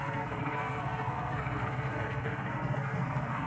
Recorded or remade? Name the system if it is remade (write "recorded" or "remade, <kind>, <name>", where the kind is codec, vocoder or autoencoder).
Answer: remade, codec, SNAC